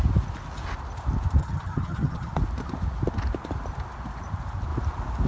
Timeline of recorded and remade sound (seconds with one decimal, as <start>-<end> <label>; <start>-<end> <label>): 0.0-1.4 recorded; 1.4-2.3 remade; 2.3-5.3 recorded